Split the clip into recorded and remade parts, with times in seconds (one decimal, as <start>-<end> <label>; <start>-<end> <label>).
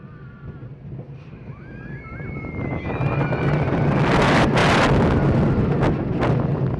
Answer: 0.0-6.8 recorded